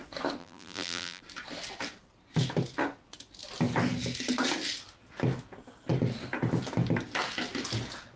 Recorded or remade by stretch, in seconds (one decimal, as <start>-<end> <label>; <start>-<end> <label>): 0.0-0.4 recorded; 0.4-1.2 remade; 1.2-8.2 recorded